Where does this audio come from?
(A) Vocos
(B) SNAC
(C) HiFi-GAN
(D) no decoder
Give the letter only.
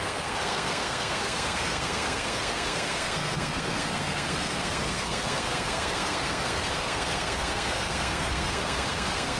B